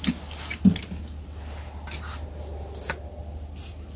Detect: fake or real real